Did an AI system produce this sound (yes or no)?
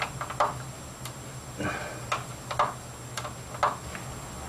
no